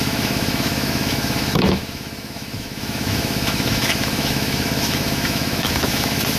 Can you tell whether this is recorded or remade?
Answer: remade